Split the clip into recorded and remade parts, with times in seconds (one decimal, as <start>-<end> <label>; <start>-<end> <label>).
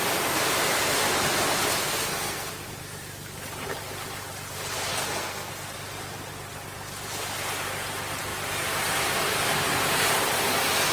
0.0-1.8 recorded; 1.8-2.5 remade; 2.5-4.9 recorded; 4.9-5.5 remade; 5.5-10.9 recorded